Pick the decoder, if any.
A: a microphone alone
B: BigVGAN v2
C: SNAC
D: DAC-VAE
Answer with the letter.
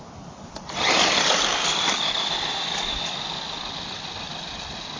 A